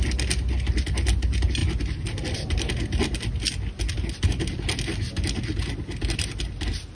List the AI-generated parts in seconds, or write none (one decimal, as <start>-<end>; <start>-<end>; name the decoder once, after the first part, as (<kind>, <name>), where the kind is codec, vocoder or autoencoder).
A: none